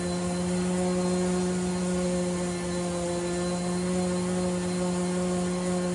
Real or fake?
real